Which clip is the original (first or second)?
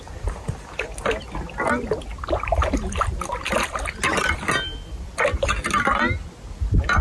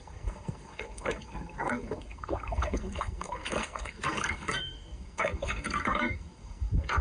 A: first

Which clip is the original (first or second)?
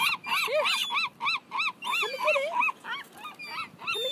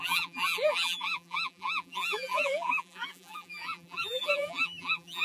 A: first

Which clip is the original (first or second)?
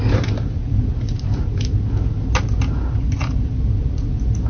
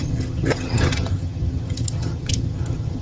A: first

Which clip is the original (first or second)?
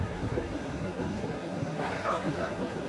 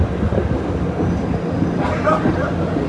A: second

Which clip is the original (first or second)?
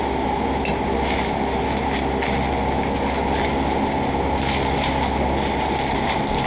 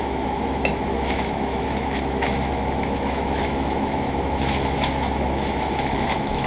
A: first